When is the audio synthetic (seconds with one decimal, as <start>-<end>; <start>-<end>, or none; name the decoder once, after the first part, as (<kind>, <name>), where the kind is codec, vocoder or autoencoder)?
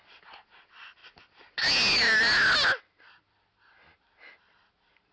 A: none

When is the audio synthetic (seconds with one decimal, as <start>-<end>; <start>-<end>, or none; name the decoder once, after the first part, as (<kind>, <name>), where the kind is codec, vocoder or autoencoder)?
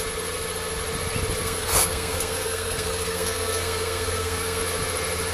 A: 1.4-4.6 (codec, SNAC)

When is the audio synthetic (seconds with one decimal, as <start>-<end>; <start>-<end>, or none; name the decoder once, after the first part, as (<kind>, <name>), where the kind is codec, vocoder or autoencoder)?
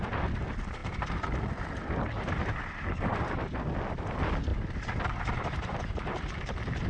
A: none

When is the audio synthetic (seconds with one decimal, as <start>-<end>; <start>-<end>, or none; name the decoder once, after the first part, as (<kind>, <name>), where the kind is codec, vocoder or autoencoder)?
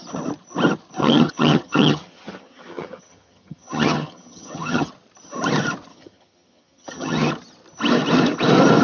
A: 1.0-4.9 (vocoder, HiFi-GAN); 5.9-7.3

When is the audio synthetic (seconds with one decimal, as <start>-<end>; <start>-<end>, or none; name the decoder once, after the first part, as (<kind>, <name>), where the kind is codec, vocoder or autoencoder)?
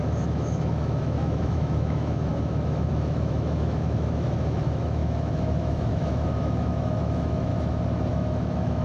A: 0.0-7.5 (autoencoder, DAC-VAE); 8.1-8.8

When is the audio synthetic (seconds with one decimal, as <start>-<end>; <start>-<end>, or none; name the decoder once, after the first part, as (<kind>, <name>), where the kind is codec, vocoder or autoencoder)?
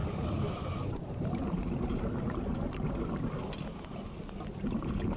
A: 0.0-2.9 (vocoder, BigVGAN v2)